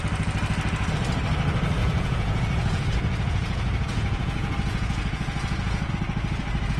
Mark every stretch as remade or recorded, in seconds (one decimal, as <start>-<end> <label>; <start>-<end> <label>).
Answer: 0.0-1.8 recorded; 1.8-5.9 remade; 5.9-6.8 recorded